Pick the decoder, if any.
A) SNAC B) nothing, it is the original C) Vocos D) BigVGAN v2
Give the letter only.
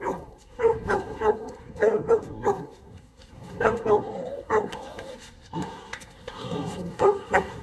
A